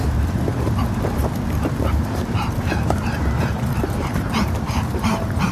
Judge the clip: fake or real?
fake